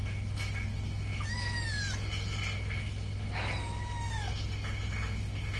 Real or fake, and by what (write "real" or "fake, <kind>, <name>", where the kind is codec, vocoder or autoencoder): real